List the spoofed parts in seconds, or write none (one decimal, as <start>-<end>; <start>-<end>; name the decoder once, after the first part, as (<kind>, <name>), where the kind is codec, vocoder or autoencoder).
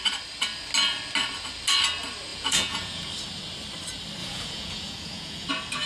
2.3-3.1 (vocoder, Vocos); 4.2-5.5